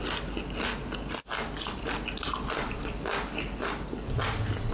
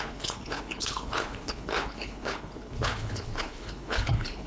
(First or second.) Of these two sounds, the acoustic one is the first